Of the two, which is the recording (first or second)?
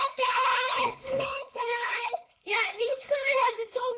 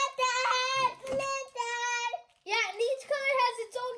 second